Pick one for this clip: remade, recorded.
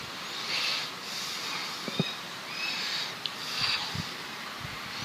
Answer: recorded